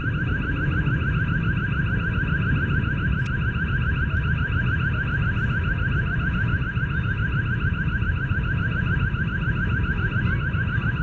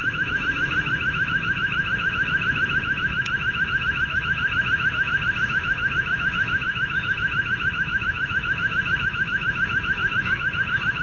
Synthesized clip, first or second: second